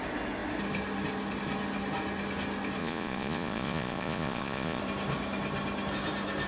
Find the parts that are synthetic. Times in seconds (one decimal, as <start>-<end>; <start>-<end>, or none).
2.8-4.8